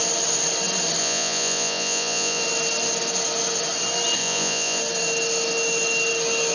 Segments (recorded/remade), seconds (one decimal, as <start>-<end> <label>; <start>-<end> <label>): 0.0-1.0 recorded; 1.0-2.4 remade; 2.4-4.2 recorded; 4.2-4.8 remade; 4.8-6.5 recorded